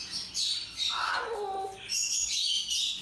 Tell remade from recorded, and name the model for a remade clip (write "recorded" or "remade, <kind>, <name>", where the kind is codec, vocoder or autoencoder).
recorded